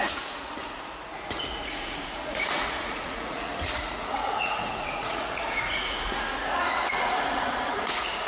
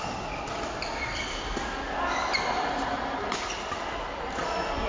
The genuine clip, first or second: second